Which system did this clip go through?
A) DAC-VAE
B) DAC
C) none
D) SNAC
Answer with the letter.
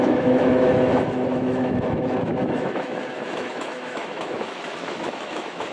A